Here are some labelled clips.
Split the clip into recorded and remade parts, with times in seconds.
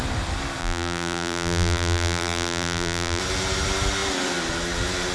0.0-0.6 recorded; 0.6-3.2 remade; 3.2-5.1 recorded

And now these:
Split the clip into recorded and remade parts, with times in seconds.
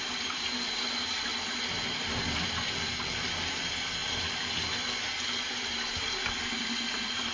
0.0-1.3 remade; 1.3-2.2 recorded; 2.2-4.0 remade; 4.0-6.3 recorded; 6.3-7.3 remade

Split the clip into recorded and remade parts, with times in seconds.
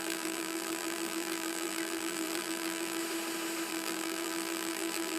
0.0-3.0 remade; 3.0-3.7 recorded; 3.7-5.2 remade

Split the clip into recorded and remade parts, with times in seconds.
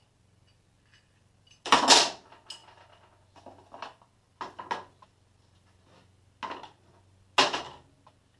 0.0-8.4 recorded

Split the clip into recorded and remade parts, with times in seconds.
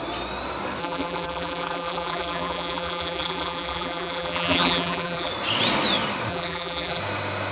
0.0-0.8 recorded; 0.8-5.3 remade; 5.3-6.3 recorded; 6.3-7.0 remade; 7.0-7.5 recorded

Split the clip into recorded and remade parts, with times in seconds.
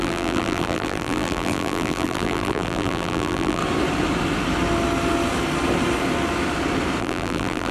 0.0-3.6 remade; 3.6-7.0 recorded; 7.0-7.7 remade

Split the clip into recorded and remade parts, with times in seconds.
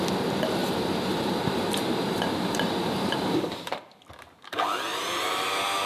0.0-0.6 recorded; 0.6-3.7 remade; 3.7-4.9 recorded; 4.9-5.9 remade